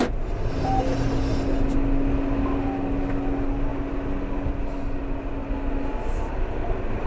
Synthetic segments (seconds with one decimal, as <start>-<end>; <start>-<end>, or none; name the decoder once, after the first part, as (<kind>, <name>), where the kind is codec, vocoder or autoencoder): none